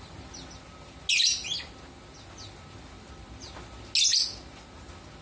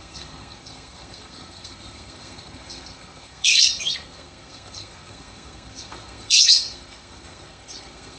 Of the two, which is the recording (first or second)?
first